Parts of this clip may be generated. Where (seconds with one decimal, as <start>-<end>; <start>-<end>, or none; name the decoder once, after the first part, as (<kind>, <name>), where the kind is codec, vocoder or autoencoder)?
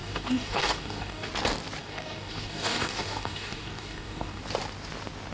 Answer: 0.0-1.3 (codec, DAC); 1.8-4.4